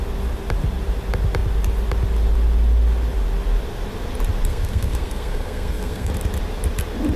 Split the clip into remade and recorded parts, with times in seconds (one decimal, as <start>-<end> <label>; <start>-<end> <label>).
0.0-4.5 recorded; 4.5-6.1 remade; 6.1-7.2 recorded